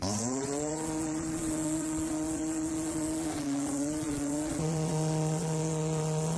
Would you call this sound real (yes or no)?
no